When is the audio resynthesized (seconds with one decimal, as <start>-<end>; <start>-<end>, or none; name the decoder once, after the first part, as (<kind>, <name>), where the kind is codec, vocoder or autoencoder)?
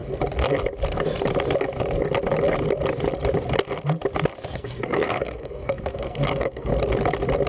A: 4.5-6.7 (codec, SNAC)